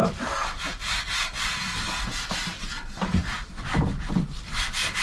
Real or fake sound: real